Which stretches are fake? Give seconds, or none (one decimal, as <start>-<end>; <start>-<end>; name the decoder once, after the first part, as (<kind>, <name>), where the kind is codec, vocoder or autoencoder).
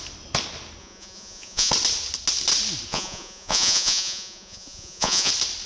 0.8-1.7 (vocoder, Vocos); 2.9-5.3